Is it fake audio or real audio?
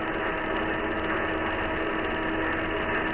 real